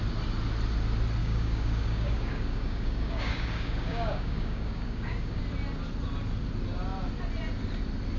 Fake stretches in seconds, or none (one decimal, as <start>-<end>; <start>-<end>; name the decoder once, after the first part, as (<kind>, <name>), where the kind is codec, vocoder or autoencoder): 1.2-5.4 (codec, DAC)